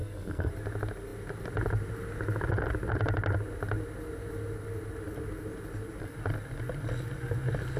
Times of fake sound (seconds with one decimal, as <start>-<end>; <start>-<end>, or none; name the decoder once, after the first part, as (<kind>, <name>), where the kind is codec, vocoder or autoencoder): 0.0-0.5 (codec, SNAC)

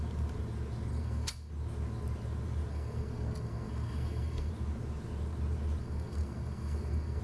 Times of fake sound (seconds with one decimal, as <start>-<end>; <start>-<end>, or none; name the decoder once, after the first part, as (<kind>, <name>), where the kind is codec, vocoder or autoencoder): 0.9-1.5 (codec, SNAC); 2.7-4.5; 5.8-7.2

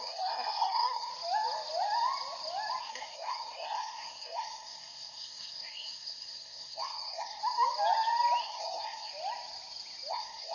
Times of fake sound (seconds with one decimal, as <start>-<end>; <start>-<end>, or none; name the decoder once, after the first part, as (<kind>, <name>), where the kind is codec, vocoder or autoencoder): 0.0-1.1 (codec, SNAC); 2.8-7.4; 8.4-9.1; 10.1-10.5

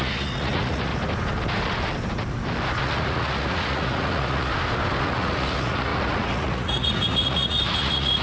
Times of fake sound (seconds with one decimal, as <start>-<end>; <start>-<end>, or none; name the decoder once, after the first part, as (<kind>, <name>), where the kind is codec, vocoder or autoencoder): 0.0-0.9 (vocoder, Vocos); 2.8-4.5; 5.0-8.2

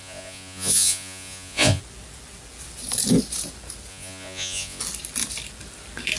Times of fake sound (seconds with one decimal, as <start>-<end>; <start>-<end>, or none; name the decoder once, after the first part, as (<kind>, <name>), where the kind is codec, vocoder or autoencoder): 0.0-1.8 (vocoder, Vocos); 3.9-4.8

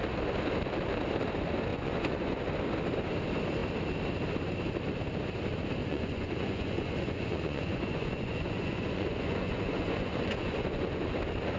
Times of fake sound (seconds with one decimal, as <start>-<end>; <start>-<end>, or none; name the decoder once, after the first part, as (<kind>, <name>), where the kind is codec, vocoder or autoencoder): 1.7-2.4 (vocoder, Vocos); 5.8-11.0

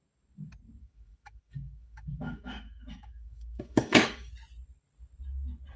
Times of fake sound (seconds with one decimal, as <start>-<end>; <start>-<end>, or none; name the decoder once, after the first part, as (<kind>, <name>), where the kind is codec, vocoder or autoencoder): 0.8-4.3 (autoencoder, DAC-VAE)